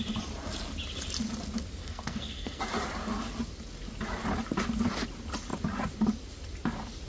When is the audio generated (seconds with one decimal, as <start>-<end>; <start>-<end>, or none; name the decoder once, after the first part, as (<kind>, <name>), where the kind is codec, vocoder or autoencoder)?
1.8-2.6 (codec, SNAC)